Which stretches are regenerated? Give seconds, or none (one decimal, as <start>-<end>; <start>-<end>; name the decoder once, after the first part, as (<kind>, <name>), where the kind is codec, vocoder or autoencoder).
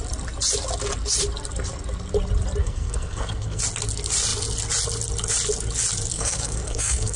2.6-3.6 (codec, SNAC); 6.1-7.2